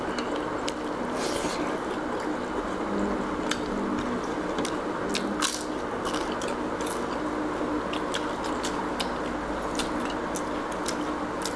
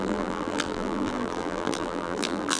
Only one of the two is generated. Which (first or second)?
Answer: second